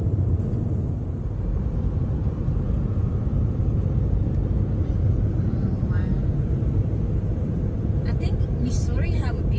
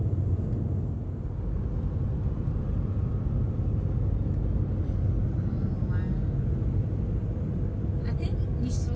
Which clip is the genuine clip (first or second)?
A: second